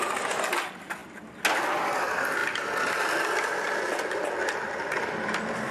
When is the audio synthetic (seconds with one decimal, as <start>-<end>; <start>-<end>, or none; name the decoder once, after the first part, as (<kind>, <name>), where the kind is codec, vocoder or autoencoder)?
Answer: none